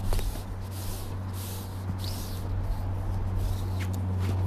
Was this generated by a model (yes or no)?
no